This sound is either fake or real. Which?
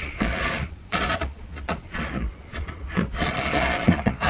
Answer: fake